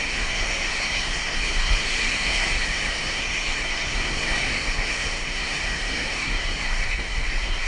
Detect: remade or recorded remade